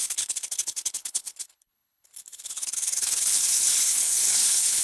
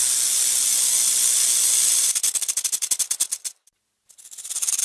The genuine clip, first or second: second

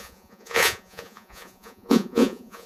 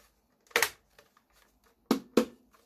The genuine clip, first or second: second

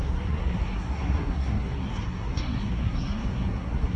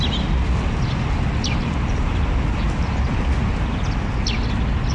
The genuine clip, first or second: second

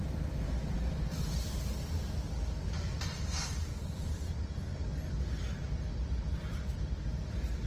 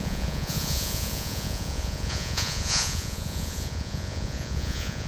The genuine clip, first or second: first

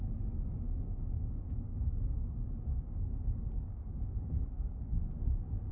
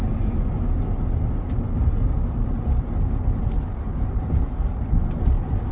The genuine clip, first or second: second